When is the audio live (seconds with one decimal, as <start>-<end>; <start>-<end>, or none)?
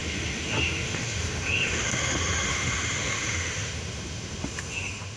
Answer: none